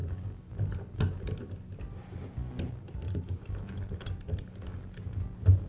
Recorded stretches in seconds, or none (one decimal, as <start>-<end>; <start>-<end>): 0.0-5.7